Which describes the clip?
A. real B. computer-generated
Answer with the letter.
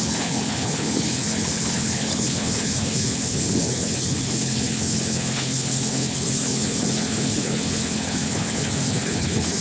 B